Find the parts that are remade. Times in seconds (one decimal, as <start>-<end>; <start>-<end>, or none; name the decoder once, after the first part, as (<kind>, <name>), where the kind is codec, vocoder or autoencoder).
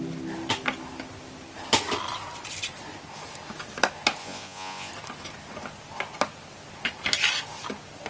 4.2-4.9 (vocoder, Vocos)